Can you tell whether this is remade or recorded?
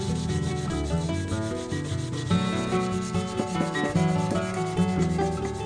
recorded